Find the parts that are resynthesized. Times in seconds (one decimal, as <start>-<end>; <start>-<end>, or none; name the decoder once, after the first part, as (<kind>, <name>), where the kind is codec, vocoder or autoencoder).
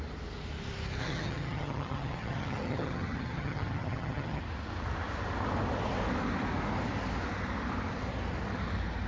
1.0-4.4 (vocoder, HiFi-GAN)